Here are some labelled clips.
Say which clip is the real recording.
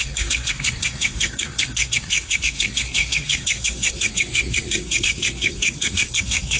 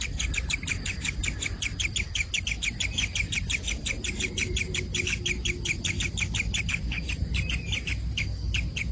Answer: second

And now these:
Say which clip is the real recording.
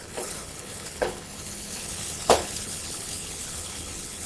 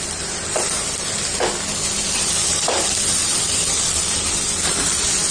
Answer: second